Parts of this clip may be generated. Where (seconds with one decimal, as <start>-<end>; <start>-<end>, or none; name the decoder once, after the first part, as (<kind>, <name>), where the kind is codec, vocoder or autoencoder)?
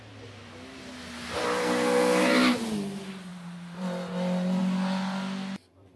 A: 1.6-2.2 (codec, SNAC)